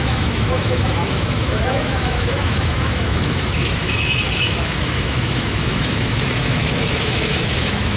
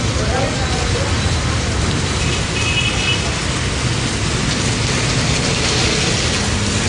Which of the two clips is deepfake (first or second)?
first